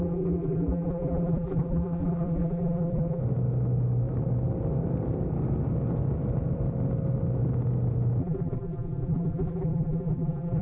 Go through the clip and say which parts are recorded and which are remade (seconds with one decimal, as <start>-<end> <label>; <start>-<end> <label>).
0.0-3.2 remade; 3.2-8.2 recorded; 8.2-10.6 remade